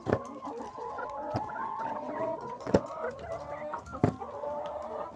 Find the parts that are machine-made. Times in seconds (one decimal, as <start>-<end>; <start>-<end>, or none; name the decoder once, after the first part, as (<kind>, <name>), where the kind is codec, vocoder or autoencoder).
0.7-2.9 (vocoder, WaveNeXt)